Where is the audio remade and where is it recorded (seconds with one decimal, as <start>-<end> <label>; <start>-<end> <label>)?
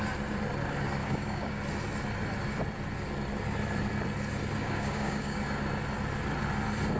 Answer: 0.0-1.0 recorded; 1.0-1.6 remade; 1.6-4.6 recorded; 4.6-5.4 remade; 5.4-7.0 recorded